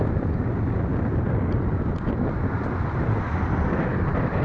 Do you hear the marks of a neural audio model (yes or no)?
no